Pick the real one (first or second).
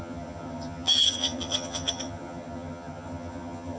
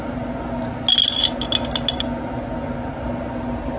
second